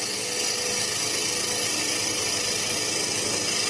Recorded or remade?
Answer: recorded